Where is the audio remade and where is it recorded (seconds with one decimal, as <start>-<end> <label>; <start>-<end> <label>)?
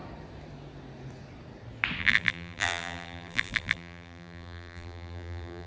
0.0-2.0 recorded; 2.0-5.7 remade